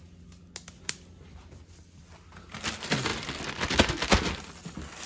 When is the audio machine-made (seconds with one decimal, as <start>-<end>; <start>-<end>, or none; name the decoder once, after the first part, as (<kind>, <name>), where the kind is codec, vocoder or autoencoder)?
none